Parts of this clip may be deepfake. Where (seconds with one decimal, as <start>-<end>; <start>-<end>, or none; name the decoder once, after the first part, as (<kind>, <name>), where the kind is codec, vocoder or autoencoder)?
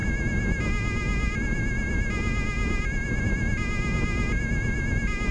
none